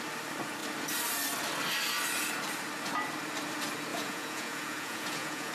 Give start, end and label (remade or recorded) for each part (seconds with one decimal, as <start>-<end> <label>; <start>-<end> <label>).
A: 0.0-3.9 recorded; 3.9-5.5 remade